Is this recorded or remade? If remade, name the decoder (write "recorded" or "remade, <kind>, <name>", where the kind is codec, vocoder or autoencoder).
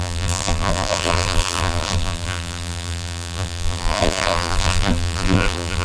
remade, vocoder, BigVGAN v2